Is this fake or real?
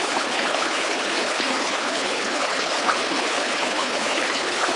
fake